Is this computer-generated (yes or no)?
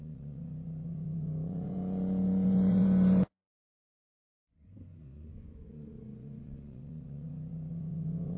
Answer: yes